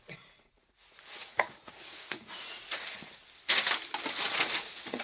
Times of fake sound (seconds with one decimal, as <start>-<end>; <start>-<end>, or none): 0.0-3.2; 4.2-5.0